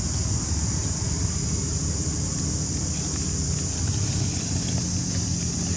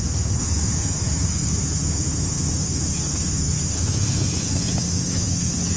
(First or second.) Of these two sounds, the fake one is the second